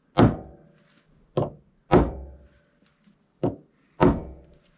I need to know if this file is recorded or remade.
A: recorded